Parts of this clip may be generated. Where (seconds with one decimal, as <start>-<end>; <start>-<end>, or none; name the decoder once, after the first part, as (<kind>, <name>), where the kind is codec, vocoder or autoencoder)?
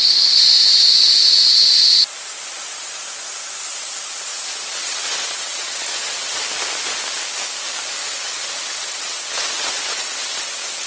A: 4.3-6.4 (vocoder, WaveNeXt); 8.0-10.9